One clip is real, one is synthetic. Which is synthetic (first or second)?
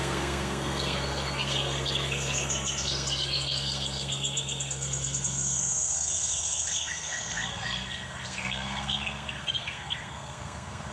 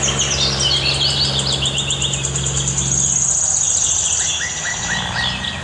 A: first